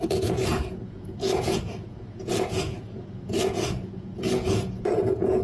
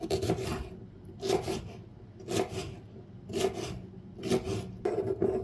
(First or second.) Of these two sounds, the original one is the second